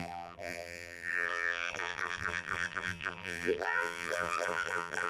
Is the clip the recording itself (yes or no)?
no